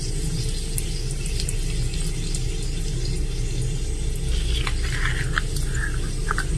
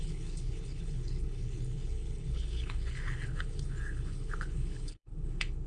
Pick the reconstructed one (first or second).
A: second